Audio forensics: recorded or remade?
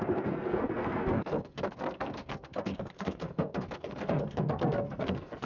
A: remade